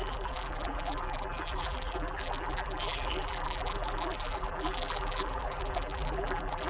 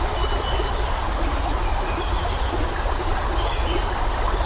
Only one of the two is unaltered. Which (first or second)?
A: second